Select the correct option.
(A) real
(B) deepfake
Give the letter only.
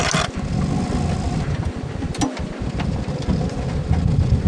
A